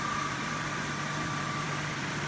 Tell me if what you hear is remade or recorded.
remade